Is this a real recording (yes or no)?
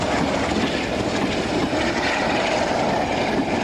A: no